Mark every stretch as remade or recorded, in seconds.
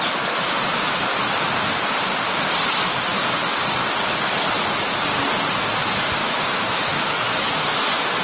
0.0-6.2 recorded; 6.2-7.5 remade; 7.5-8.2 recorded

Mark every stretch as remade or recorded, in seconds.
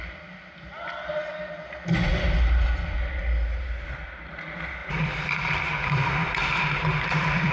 0.0-4.8 recorded; 4.8-5.5 remade; 5.5-6.2 recorded; 6.2-7.5 remade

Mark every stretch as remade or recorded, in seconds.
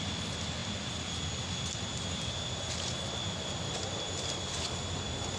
0.0-5.4 recorded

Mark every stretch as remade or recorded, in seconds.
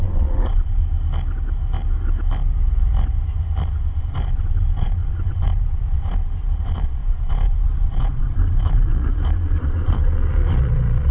0.0-0.8 remade; 0.8-4.0 recorded; 4.0-11.1 remade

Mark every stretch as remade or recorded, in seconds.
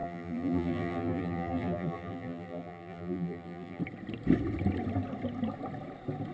0.0-3.8 remade; 3.8-6.3 recorded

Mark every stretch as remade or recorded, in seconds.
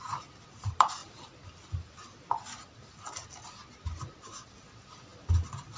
0.0-5.8 recorded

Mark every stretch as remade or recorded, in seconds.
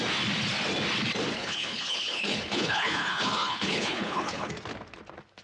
0.0-1.3 recorded; 1.3-4.5 remade; 4.5-5.4 recorded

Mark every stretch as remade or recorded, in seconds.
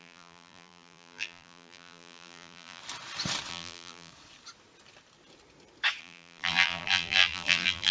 0.0-2.8 remade; 2.8-3.5 recorded; 3.5-4.1 remade; 4.1-6.0 recorded; 6.0-7.9 remade